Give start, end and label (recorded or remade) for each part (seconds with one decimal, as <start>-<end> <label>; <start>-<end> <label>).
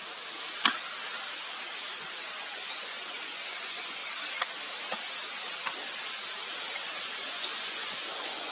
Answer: 0.0-1.8 recorded; 1.8-4.0 remade; 4.0-7.0 recorded; 7.0-8.5 remade